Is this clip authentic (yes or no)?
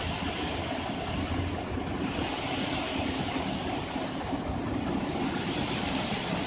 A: yes